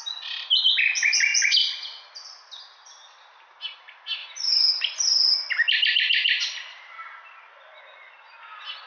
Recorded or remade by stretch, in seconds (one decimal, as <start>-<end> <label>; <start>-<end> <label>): 0.0-8.9 recorded